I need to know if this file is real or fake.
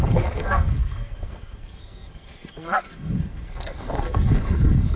fake